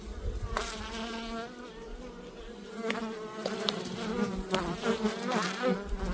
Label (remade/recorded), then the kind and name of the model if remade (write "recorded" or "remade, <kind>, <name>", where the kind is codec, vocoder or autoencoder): recorded